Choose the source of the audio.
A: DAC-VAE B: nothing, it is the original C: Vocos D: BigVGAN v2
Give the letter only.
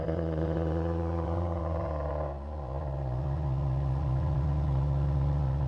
C